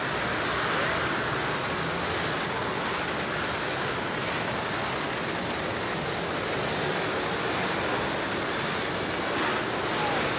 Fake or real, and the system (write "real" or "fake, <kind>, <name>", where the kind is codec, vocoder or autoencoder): real